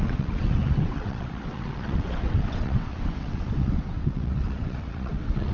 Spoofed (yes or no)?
yes